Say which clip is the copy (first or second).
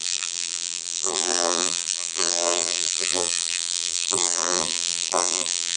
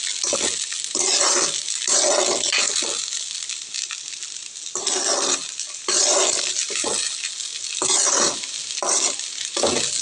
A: first